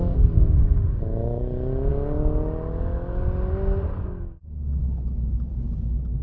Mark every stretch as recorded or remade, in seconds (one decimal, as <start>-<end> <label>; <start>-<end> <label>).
0.0-6.2 recorded